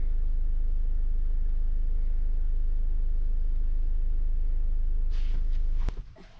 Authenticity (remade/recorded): recorded